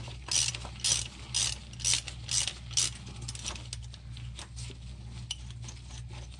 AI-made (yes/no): no